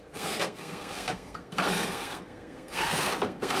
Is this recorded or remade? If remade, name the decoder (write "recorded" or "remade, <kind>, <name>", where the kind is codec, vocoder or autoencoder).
remade, codec, SNAC